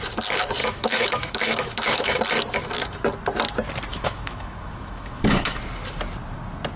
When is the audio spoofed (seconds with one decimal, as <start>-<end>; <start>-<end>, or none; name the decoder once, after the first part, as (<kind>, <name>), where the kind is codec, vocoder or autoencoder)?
0.6-2.2 (autoencoder, DAC-VAE); 3.9-5.6

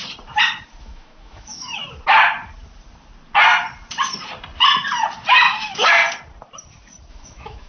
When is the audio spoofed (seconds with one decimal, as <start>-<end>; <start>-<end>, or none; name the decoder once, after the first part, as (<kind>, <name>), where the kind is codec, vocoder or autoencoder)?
0.8-1.8 (autoencoder, DAC-VAE); 5.6-6.0; 7.1-7.7

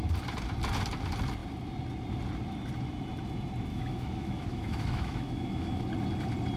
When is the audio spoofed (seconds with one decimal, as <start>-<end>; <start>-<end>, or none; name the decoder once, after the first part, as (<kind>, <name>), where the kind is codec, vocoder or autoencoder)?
3.7-5.8 (autoencoder, DAC-VAE)

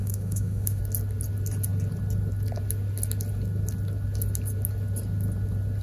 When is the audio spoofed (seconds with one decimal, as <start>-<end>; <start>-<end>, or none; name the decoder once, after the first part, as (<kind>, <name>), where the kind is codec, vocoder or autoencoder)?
0.0-0.8 (autoencoder, DAC-VAE)

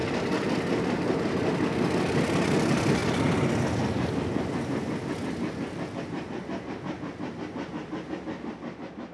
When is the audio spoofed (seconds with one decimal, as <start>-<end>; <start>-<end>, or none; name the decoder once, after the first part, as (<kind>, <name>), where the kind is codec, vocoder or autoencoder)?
none

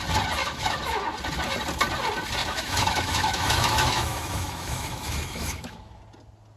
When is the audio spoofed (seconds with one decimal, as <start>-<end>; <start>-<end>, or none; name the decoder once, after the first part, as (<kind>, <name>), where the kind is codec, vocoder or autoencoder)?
0.4-1.0 (autoencoder, DAC-VAE); 2.4-6.0

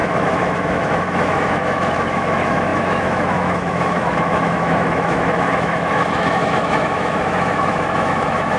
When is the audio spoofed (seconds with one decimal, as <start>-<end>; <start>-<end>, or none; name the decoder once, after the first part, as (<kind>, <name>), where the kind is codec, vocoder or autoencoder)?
0.0-8.6 (autoencoder, DAC-VAE)

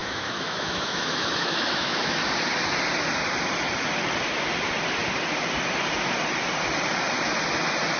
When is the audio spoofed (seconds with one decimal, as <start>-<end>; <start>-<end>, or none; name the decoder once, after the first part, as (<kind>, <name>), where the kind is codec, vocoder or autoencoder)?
0.0-2.2 (autoencoder, DAC-VAE)